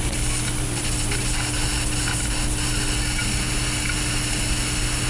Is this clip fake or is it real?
real